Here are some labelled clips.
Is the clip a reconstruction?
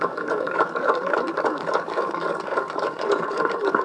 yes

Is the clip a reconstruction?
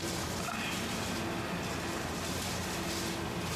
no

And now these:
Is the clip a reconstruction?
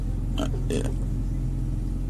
no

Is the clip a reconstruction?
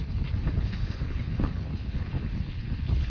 yes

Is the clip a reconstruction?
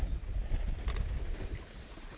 no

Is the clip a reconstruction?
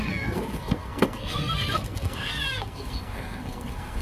yes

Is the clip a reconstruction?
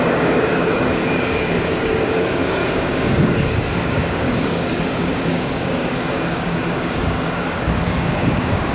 yes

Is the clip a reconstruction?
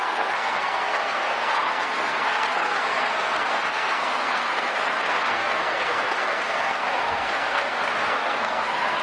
yes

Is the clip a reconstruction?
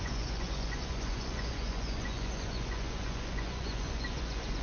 yes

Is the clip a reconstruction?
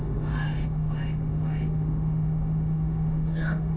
yes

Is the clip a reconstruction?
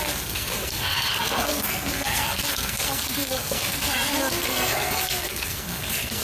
yes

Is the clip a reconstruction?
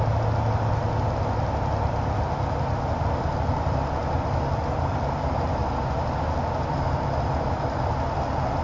no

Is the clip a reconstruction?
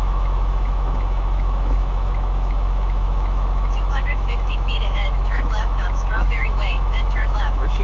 yes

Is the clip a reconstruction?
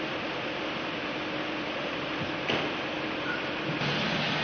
no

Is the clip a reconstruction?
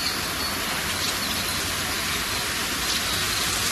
no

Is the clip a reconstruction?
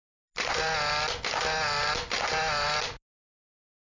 no